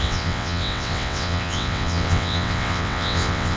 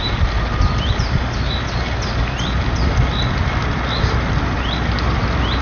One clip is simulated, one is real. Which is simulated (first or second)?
first